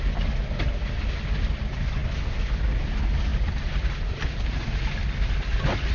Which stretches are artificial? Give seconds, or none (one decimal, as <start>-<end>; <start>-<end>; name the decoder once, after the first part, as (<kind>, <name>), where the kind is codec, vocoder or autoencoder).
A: 3.3-4.9 (vocoder, BigVGAN v2)